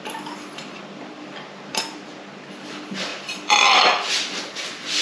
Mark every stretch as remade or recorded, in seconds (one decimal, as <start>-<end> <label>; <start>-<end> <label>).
0.0-3.1 recorded; 3.1-4.4 remade; 4.4-5.0 recorded